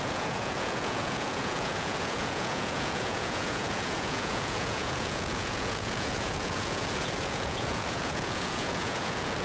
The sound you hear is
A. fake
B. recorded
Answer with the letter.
A